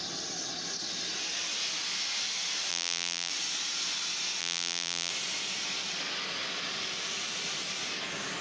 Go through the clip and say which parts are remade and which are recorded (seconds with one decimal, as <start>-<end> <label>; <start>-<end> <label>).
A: 0.0-2.7 recorded; 2.7-3.3 remade; 3.3-4.4 recorded; 4.4-5.1 remade; 5.1-8.4 recorded